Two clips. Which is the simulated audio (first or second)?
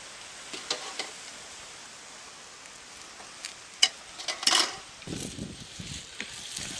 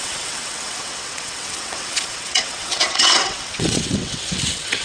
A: second